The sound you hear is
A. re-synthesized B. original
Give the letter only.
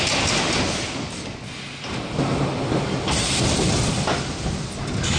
B